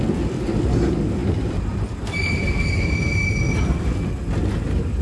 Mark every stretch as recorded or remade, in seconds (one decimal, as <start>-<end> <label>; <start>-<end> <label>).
0.0-5.0 recorded